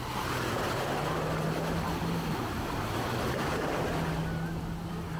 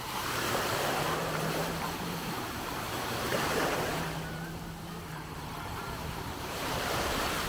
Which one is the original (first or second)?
first